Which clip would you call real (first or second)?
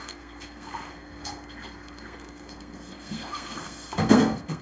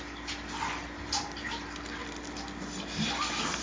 second